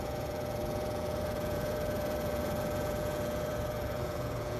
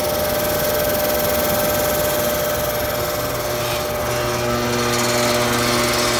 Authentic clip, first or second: second